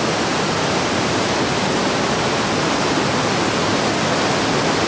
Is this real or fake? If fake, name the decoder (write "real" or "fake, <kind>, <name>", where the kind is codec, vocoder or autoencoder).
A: real